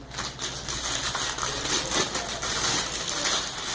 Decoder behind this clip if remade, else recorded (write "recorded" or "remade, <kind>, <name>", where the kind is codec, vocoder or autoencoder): recorded